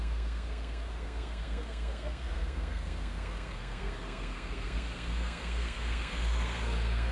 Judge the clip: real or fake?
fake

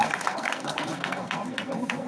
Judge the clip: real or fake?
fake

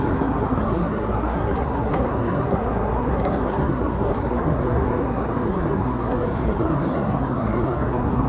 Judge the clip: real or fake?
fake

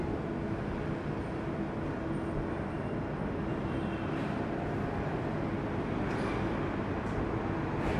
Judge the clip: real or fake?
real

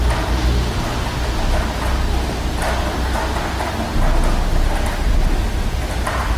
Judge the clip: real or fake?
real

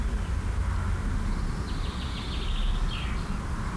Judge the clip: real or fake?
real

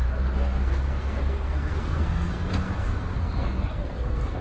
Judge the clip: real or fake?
fake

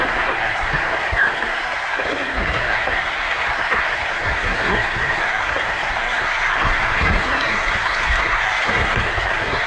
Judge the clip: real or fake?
fake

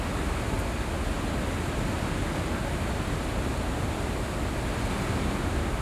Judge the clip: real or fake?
real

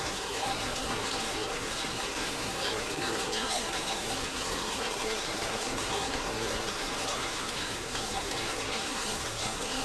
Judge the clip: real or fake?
fake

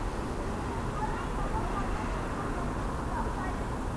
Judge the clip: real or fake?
real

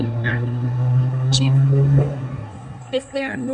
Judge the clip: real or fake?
fake